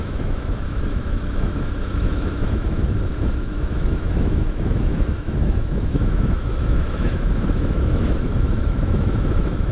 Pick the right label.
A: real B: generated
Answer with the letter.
B